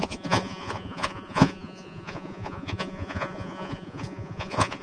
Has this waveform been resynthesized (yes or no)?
yes